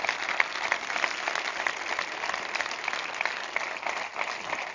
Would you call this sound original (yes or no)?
yes